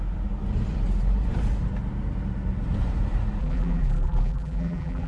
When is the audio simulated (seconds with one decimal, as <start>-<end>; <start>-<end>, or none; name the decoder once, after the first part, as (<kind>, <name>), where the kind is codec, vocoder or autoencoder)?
3.4-5.1 (vocoder, BigVGAN v2)